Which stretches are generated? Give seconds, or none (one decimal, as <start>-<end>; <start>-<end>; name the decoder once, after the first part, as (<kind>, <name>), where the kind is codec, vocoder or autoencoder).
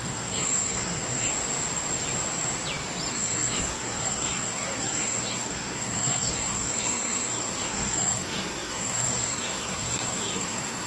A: 0.0-1.3 (codec, SNAC); 3.1-10.9